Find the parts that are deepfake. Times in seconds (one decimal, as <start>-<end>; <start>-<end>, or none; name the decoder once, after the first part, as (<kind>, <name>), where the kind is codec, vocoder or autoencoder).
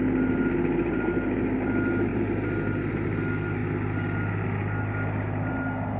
none